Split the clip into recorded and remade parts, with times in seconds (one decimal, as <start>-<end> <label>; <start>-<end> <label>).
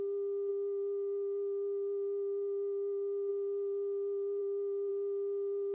0.0-0.5 recorded; 0.5-3.3 remade; 3.3-4.4 recorded; 4.4-4.9 remade; 4.9-5.7 recorded